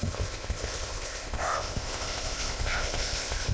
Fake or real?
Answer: fake